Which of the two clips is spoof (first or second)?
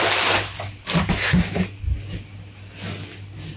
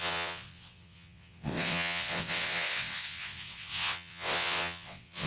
second